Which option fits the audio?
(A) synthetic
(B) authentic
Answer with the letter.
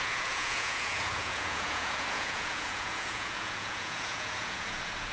A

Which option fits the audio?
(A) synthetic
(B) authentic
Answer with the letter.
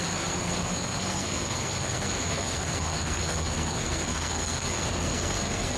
A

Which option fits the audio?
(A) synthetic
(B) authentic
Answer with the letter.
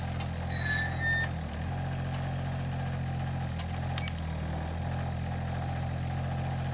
B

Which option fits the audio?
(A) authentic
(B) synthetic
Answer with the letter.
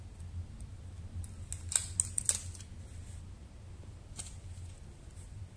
A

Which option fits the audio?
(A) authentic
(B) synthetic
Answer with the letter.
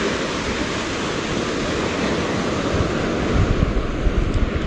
A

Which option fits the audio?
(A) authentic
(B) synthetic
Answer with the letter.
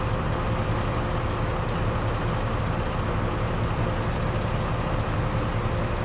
A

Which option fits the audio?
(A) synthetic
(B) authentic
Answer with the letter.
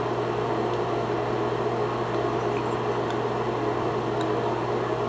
B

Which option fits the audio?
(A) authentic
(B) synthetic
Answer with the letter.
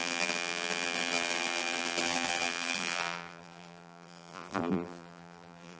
B